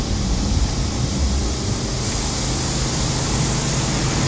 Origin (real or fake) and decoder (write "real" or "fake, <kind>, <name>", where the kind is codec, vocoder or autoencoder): real